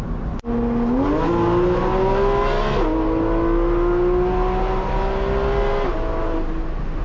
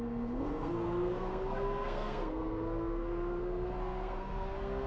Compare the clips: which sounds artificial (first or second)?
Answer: second